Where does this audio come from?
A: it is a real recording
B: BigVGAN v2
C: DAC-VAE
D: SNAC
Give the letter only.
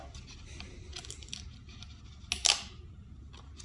A